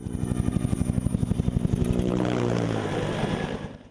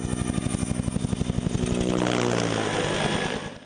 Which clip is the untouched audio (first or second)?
second